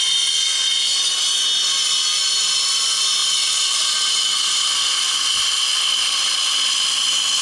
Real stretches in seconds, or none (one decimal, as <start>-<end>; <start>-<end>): 0.0-7.4